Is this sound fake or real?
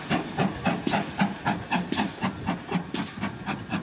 real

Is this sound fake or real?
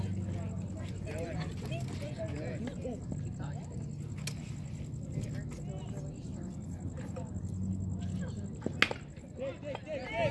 real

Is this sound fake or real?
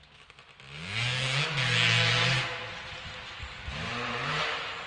real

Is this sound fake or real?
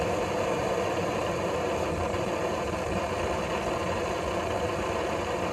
real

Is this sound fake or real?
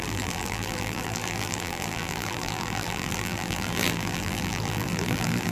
fake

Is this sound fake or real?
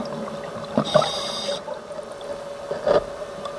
real